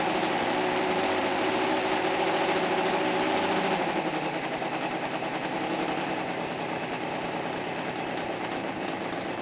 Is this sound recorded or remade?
recorded